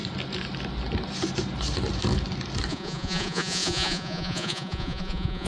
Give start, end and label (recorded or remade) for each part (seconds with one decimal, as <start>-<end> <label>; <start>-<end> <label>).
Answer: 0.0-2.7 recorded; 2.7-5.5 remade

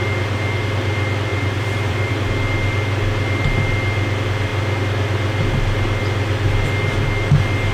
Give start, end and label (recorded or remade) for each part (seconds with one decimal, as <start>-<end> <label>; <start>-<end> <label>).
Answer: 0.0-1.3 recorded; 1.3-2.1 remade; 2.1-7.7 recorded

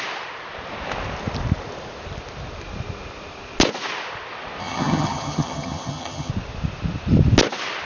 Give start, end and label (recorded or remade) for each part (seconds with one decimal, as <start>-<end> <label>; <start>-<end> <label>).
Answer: 0.0-4.6 recorded; 4.6-6.3 remade; 6.3-7.8 recorded

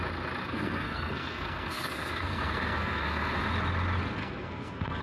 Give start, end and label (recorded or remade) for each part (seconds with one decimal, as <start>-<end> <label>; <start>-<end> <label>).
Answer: 0.0-0.4 recorded; 0.4-3.4 remade; 3.4-4.2 recorded; 4.2-5.0 remade

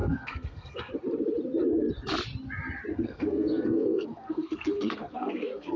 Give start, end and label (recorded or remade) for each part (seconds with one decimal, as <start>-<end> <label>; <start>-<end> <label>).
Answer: 0.0-0.9 remade; 0.9-2.9 recorded; 2.9-5.8 remade